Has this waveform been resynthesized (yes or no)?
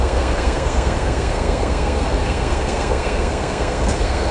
yes